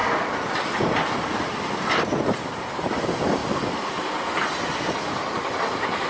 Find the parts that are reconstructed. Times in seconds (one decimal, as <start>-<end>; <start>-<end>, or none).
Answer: none